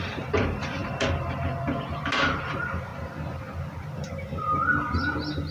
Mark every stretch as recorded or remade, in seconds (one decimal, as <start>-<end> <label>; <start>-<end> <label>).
0.0-0.8 remade; 0.8-2.5 recorded; 2.5-2.9 remade; 2.9-4.8 recorded; 4.8-5.5 remade